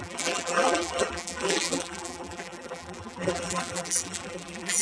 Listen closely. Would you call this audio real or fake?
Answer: fake